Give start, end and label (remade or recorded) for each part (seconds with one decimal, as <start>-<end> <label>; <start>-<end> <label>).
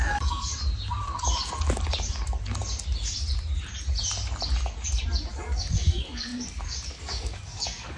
0.0-0.5 remade; 0.5-5.3 recorded; 5.3-8.0 remade